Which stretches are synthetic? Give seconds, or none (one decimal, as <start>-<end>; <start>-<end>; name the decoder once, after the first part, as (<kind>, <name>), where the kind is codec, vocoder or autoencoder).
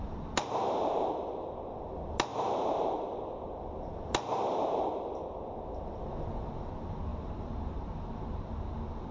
none